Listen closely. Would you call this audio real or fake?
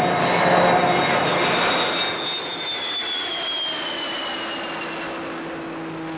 real